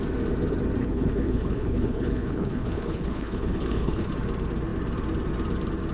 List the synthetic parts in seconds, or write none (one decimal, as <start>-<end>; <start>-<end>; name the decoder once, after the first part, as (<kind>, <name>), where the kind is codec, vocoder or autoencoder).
0.8-4.1 (codec, HILCodec)

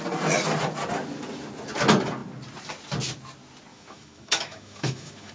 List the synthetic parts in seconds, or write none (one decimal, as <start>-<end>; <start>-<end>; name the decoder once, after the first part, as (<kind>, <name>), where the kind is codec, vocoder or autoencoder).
3.7-5.3 (autoencoder, DAC-VAE)

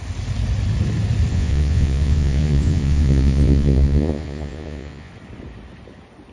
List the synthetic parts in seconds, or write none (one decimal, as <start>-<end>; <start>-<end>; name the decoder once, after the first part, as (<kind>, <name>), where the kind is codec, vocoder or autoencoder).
1.3-5.1 (vocoder, Vocos)

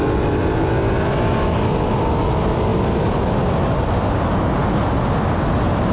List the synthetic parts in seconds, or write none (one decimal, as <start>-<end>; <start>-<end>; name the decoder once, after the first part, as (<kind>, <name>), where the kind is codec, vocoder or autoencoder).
none